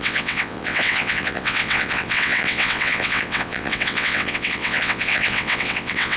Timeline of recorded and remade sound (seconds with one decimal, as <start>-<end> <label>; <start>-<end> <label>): 0.0-6.2 remade